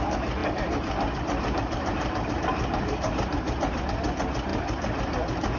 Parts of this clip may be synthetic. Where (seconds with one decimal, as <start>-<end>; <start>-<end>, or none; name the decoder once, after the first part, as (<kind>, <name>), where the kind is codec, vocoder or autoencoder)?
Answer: 0.4-3.8 (vocoder, BigVGAN v2)